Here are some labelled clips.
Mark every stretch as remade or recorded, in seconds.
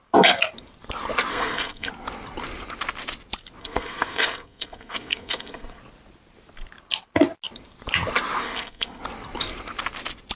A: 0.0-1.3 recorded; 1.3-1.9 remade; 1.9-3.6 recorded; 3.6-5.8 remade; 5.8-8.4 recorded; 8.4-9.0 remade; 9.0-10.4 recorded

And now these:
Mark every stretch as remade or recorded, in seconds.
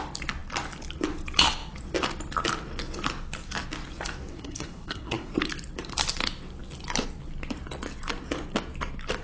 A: 0.0-4.3 recorded; 4.3-5.3 remade; 5.3-9.2 recorded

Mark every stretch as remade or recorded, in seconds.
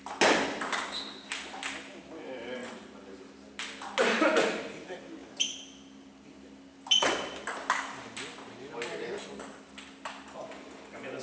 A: 0.0-11.2 recorded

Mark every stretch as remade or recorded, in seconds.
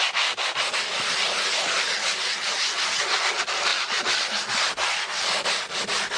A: 0.0-6.2 recorded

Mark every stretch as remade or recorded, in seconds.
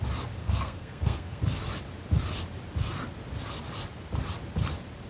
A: 0.0-0.4 recorded; 0.4-1.4 remade; 1.4-5.1 recorded